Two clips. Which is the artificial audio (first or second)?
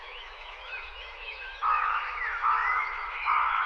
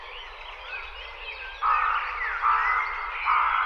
first